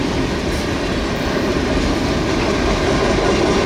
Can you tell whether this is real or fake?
real